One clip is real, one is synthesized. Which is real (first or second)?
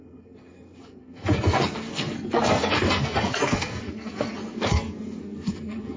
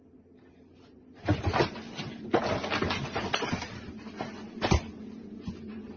second